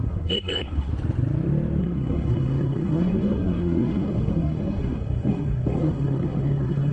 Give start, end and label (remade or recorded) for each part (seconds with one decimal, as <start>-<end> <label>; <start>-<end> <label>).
0.0-0.9 remade; 0.9-1.8 recorded; 1.8-6.9 remade